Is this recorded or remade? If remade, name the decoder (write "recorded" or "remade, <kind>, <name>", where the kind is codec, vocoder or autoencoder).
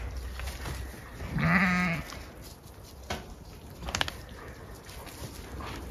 recorded